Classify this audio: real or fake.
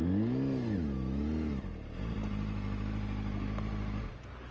real